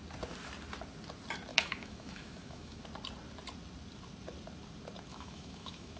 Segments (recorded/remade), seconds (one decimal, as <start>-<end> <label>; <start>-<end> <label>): 0.0-1.5 recorded; 1.5-2.8 remade; 2.8-5.1 recorded; 5.1-6.0 remade